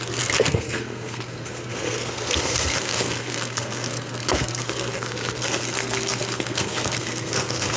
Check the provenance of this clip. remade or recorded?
remade